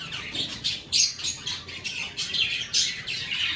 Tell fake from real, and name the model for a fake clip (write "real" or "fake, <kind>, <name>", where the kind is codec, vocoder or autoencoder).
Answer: real